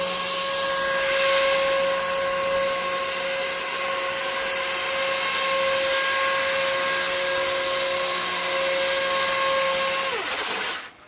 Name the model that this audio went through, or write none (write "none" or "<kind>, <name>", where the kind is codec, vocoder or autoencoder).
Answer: none